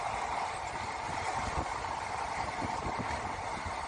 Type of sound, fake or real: real